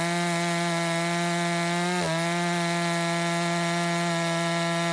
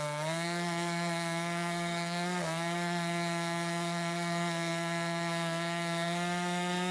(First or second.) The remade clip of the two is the second